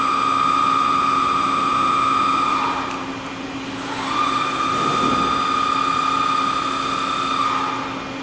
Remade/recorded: recorded